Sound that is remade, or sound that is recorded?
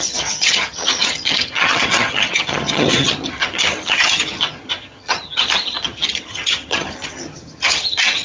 remade